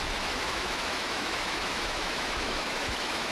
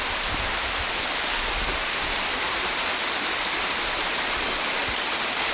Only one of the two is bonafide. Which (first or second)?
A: second